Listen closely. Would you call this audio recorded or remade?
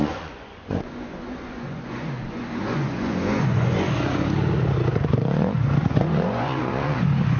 remade